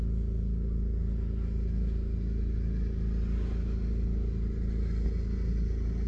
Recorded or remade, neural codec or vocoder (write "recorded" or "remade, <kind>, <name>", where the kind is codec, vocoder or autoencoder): recorded